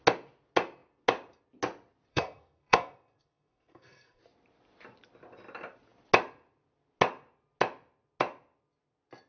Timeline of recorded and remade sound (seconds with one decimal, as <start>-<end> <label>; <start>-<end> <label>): 0.0-2.1 recorded; 2.1-4.2 remade; 4.2-9.3 recorded